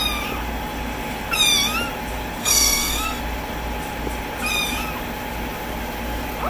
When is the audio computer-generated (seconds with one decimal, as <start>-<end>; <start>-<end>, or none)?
2.4-3.2